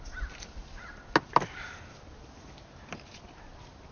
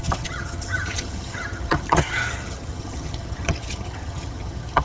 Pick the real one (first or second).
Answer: first